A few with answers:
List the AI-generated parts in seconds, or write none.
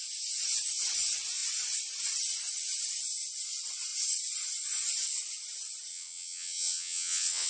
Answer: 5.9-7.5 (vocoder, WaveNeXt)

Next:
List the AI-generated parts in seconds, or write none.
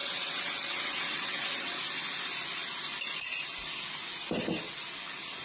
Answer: 0.0-1.8 (vocoder, WaveNeXt)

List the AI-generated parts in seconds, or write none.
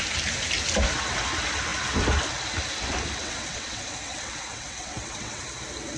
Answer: 3.2-5.4 (vocoder, WaveNeXt)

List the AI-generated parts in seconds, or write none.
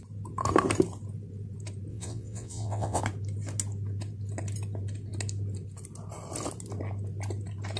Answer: 1.9-3.0 (vocoder, WaveNeXt)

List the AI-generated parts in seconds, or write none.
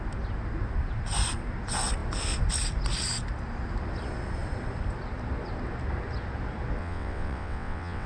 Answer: 6.8-8.1 (vocoder, WaveNeXt)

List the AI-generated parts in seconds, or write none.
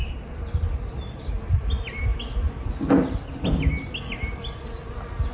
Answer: none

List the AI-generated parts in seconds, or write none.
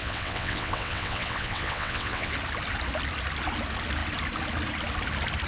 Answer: 0.0-2.3 (vocoder, WaveNeXt)